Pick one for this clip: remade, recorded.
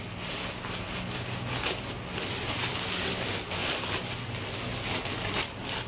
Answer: recorded